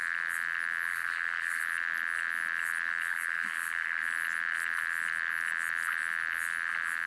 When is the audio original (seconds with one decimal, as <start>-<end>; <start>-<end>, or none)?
0.0-0.9; 1.6-3.1; 4.0-7.1

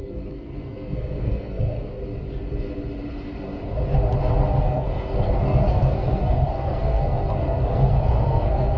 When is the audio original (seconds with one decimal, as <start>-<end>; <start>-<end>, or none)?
2.0-4.6

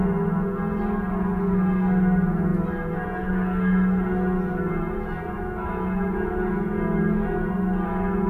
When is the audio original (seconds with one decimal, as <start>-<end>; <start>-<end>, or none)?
0.0-8.3